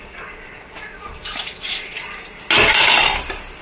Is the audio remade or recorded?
recorded